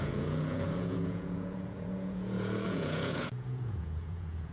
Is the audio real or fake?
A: fake